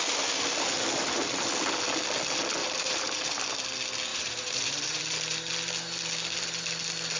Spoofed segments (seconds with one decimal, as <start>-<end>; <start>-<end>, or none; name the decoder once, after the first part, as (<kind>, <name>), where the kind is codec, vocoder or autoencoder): 2.6-3.4 (vocoder, BigVGAN v2); 4.1-5.0